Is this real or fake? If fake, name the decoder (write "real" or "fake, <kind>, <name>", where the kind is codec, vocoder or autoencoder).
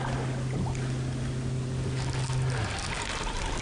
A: real